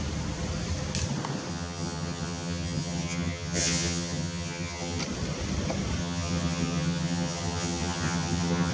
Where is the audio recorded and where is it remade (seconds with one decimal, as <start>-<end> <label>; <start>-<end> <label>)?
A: 0.0-1.5 recorded; 1.5-5.0 remade; 5.0-6.0 recorded; 6.0-8.7 remade